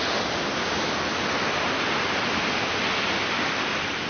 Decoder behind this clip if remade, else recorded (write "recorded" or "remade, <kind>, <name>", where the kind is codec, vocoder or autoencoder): recorded